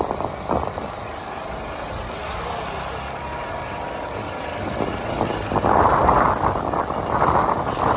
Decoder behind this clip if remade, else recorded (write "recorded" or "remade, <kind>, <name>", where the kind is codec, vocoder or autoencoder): recorded